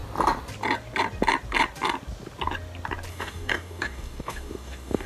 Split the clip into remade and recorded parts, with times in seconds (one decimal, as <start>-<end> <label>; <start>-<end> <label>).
0.0-3.1 recorded; 3.1-5.1 remade